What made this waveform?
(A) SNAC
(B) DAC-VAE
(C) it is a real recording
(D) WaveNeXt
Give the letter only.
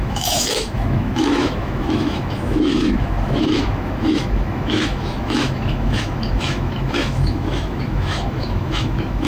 B